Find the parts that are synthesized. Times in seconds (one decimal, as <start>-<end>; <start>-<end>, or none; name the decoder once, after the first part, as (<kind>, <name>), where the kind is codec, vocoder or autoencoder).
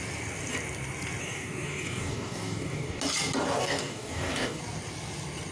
1.2-3.0 (codec, DAC); 3.6-4.6